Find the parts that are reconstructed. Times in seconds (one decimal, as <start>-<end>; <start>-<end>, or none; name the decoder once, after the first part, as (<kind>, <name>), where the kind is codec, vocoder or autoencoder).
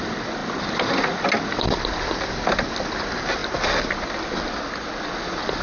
none